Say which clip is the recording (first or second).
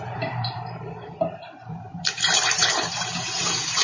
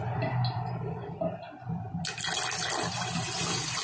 second